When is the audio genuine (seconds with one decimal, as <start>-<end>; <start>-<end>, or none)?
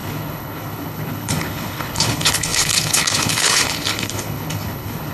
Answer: none